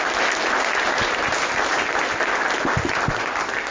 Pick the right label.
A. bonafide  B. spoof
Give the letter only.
A